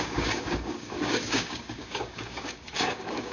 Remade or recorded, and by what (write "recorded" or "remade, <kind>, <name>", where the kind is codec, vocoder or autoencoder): remade, codec, DAC